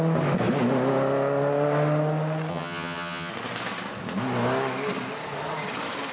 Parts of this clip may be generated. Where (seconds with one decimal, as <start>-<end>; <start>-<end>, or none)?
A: 2.5-3.3